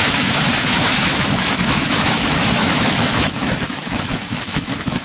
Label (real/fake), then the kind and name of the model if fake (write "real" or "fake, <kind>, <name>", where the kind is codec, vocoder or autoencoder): fake, autoencoder, DAC-VAE